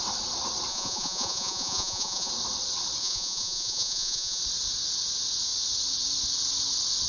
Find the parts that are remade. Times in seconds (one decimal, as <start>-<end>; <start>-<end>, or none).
0.7-2.3; 3.0-4.4